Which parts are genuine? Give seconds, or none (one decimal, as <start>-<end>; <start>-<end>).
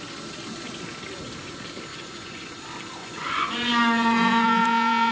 0.0-1.9; 2.5-3.0